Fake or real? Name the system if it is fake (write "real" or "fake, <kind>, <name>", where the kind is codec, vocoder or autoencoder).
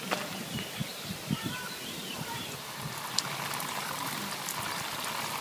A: fake, vocoder, BigVGAN v2